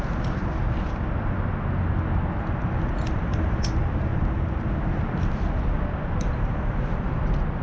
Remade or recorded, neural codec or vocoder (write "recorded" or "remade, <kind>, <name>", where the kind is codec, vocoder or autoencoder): recorded